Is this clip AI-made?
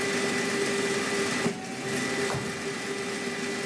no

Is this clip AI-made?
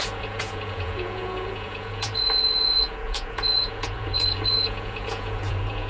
yes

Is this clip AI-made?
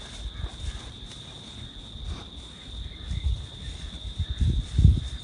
no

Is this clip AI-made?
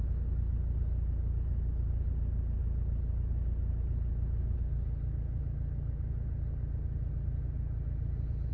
no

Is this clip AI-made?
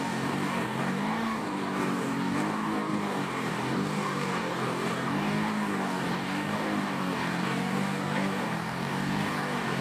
yes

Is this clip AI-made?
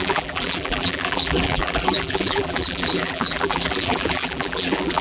yes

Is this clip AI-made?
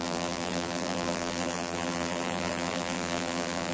yes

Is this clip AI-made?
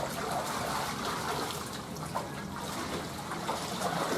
no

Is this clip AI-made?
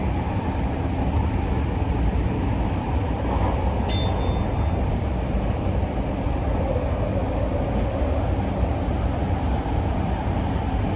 no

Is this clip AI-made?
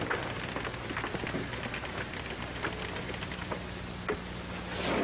no